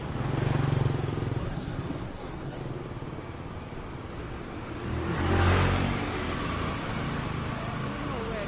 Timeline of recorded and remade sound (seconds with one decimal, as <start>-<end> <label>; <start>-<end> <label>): 0.0-1.4 recorded; 1.4-2.6 remade; 2.6-8.5 recorded